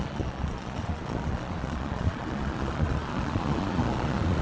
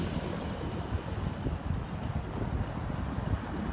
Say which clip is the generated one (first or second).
first